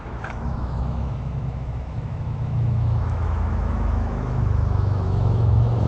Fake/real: fake